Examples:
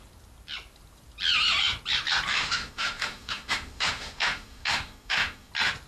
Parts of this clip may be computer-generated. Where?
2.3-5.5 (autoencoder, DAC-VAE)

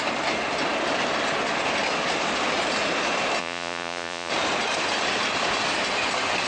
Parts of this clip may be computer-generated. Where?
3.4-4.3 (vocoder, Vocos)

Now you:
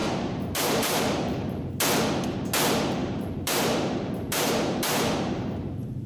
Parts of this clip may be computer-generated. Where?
0.0-1.7 (vocoder, BigVGAN v2); 3.0-6.1

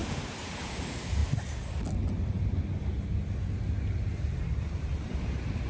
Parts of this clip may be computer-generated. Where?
0.0-1.2 (vocoder, BigVGAN v2); 4.6-5.7

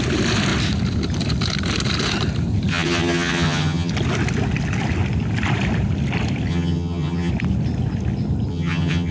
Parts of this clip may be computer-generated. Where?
2.7-3.9 (vocoder, HiFi-GAN); 6.5-7.3; 8.5-9.1

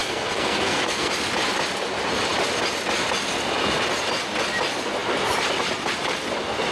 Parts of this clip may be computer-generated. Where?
0.0-1.1 (codec, SNAC)